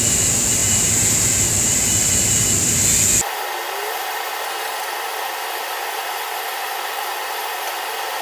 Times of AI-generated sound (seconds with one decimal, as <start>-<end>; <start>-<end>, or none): 0.6-1.4